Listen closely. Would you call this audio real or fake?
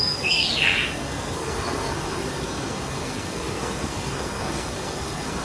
fake